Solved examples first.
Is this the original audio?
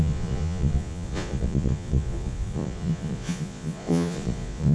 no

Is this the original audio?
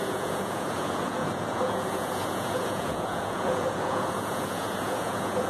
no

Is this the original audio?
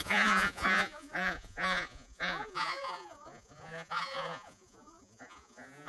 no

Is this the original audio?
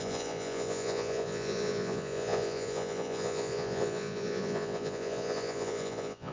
no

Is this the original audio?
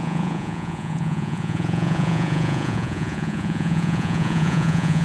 no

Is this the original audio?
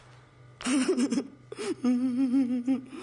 yes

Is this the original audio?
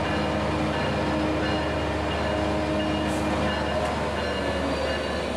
yes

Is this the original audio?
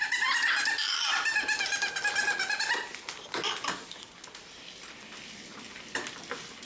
yes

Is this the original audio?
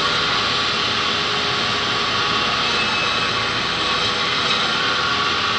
yes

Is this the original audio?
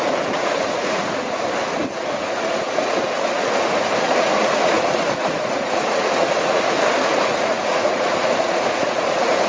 no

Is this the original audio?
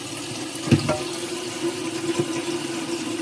yes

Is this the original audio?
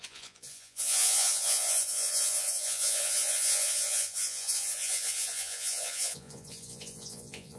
no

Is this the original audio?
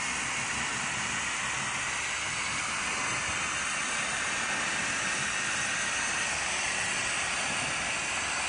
yes